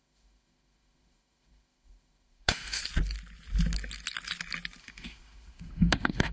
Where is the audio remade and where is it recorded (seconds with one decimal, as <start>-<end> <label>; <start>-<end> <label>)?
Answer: 0.0-2.8 remade; 2.8-4.8 recorded; 4.8-6.3 remade